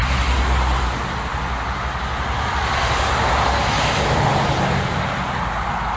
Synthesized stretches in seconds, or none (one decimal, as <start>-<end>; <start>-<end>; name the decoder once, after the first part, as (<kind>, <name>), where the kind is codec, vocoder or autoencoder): none